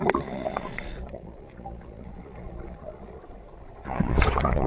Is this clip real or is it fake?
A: fake